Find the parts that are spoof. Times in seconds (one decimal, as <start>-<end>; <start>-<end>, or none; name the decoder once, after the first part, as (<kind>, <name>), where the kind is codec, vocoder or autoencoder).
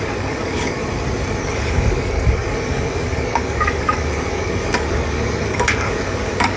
0.0-0.8 (codec, DAC); 1.4-6.6